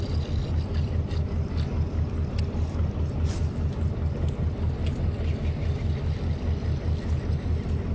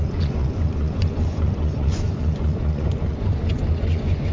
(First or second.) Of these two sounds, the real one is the first